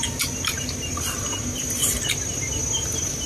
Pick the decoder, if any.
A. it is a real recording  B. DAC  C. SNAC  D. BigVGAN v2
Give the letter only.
A